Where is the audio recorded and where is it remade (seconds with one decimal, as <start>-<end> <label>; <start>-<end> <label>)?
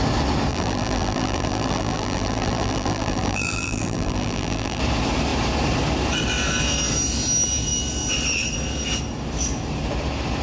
0.0-0.5 recorded; 0.5-4.8 remade; 4.8-10.4 recorded